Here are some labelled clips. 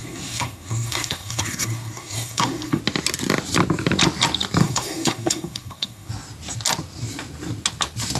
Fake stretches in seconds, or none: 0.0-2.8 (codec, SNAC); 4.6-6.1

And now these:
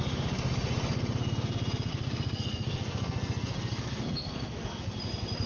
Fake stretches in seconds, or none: 1.9-4.8 (codec, SNAC)

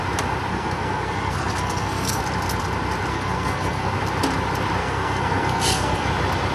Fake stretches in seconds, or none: 0.5-2.2 (codec, SNAC); 3.1-3.9; 4.8-6.1

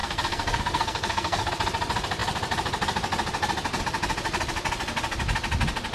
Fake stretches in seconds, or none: 0.0-1.5 (codec, SNAC)